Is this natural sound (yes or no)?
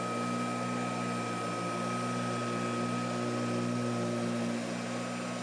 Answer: yes